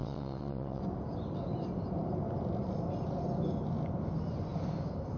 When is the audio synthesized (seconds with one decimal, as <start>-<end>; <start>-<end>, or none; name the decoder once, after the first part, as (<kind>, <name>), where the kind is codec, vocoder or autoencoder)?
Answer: 0.0-0.8 (vocoder, WaveNeXt)